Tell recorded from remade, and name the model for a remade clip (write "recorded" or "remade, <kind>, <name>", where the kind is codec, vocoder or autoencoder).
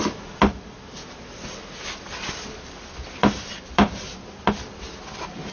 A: recorded